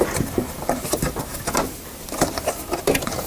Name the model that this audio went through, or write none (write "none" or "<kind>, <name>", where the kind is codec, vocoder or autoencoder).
none